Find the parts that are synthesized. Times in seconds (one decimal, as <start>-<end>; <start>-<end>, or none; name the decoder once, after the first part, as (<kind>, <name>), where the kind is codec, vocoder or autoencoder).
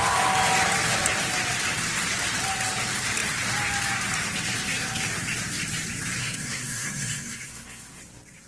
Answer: 6.2-8.0 (codec, SNAC)